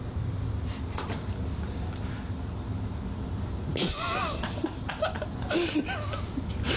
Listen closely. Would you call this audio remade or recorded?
recorded